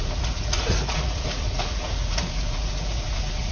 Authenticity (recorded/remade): remade